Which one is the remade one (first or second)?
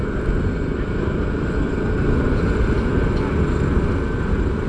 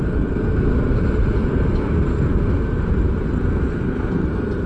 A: second